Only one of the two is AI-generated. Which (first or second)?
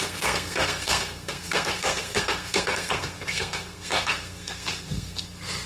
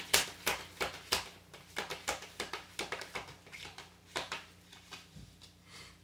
first